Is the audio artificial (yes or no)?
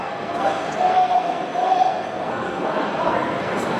yes